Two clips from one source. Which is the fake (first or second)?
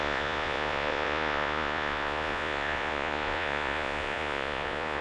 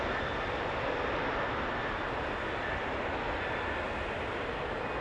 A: first